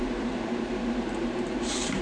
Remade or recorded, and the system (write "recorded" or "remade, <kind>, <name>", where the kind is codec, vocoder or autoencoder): remade, vocoder, BigVGAN v2